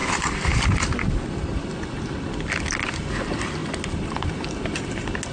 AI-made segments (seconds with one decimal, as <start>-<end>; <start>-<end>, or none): none